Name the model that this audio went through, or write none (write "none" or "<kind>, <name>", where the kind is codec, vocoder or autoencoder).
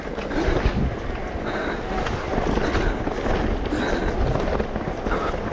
none